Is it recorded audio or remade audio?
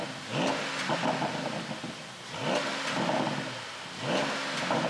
recorded